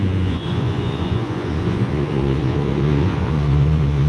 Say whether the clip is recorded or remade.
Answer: remade